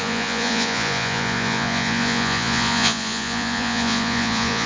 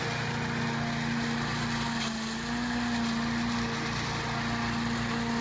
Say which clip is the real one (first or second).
second